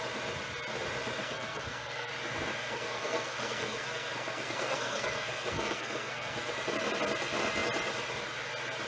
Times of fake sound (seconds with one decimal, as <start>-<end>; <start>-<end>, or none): 1.2-2.1; 2.5-6.5